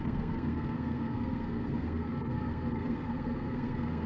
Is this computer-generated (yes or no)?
yes